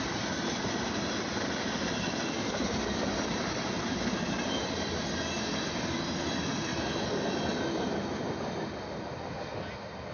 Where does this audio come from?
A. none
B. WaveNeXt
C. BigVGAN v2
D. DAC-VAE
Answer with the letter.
A